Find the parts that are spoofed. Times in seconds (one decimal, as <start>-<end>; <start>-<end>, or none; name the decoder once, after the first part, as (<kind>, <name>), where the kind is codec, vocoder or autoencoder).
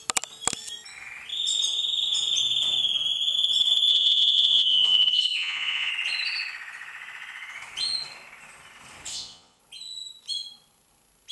3.9-5.9 (vocoder, Vocos); 9.1-9.6